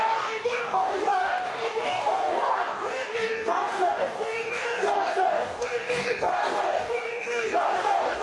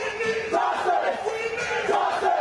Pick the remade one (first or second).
first